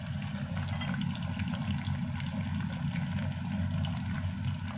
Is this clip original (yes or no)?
yes